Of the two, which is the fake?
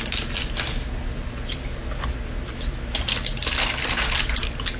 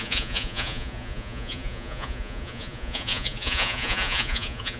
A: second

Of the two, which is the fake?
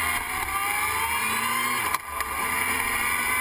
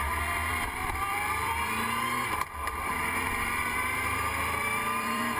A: second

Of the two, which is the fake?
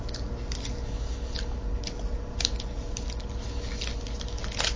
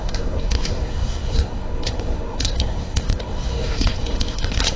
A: second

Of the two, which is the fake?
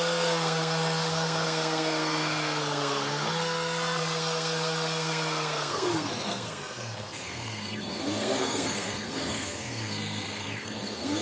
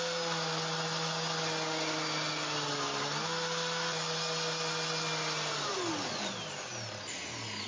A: first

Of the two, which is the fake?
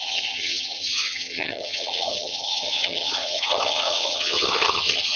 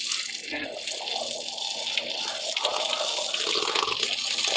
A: first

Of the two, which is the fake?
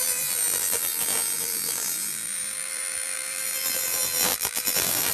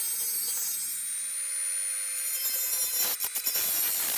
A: first